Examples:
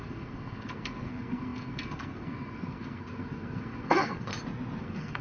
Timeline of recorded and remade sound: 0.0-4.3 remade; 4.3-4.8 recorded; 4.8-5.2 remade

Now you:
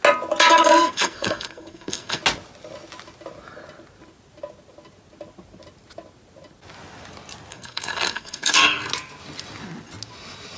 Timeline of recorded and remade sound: 0.0-0.5 recorded; 0.5-2.2 remade; 2.2-7.5 recorded; 7.5-8.9 remade; 8.9-10.6 recorded

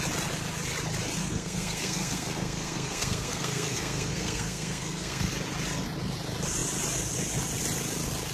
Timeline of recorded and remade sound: 0.0-1.2 recorded; 1.2-5.3 remade; 5.3-8.3 recorded